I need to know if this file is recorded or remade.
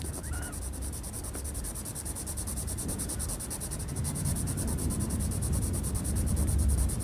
remade